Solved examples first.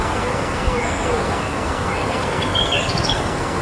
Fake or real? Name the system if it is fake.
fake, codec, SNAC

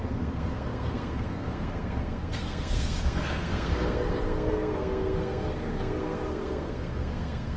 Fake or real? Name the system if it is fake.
fake, codec, SNAC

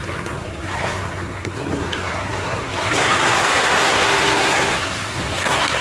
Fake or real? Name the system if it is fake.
fake, codec, SNAC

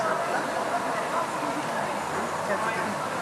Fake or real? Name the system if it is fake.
real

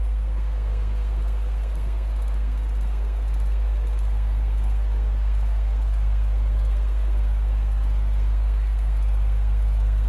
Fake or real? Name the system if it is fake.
fake, codec, SNAC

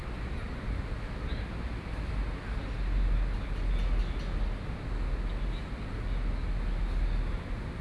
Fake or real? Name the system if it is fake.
real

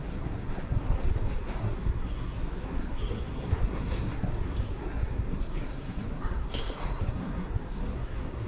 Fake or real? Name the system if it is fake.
fake, codec, SNAC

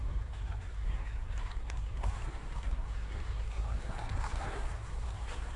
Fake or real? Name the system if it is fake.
fake, codec, SNAC